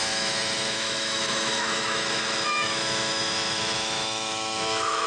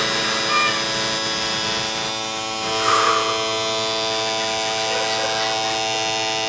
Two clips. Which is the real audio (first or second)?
second